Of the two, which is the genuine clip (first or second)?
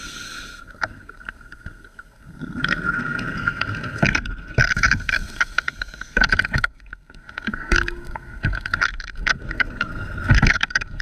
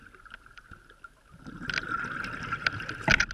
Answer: second